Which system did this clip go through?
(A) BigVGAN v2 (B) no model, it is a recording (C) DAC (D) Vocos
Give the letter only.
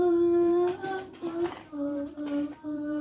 A